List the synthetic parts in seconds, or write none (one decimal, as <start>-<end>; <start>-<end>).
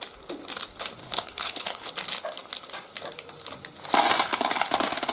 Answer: 1.0-1.9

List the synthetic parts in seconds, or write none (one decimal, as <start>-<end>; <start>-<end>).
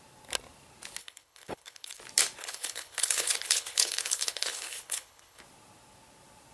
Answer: 1.0-2.0; 2.4-5.4